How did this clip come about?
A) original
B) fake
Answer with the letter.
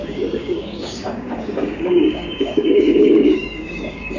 B